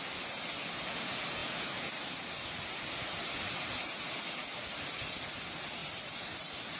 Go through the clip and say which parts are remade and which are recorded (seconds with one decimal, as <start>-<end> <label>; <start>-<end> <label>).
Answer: 0.0-0.5 remade; 0.5-5.8 recorded; 5.8-6.8 remade